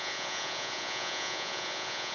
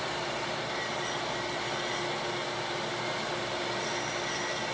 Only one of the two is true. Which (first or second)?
second